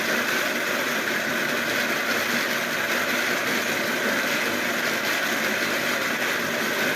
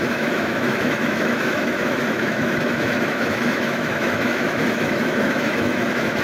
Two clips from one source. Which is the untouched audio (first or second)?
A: first